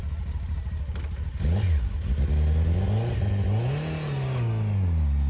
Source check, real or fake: real